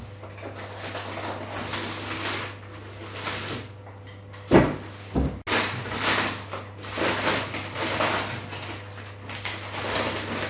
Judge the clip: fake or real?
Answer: real